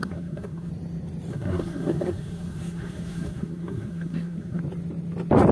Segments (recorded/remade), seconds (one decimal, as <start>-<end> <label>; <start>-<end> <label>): 0.0-0.7 remade; 0.7-1.3 recorded; 1.3-4.6 remade; 4.6-5.5 recorded